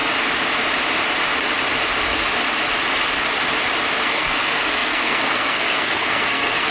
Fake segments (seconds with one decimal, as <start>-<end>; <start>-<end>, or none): 4.0-6.7